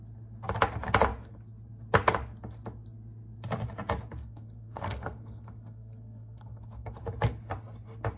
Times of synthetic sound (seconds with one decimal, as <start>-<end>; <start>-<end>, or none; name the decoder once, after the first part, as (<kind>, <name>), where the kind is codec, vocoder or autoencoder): 4.2-6.9 (codec, SNAC)